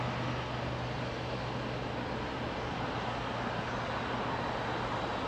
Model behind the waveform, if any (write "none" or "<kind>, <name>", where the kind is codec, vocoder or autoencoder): none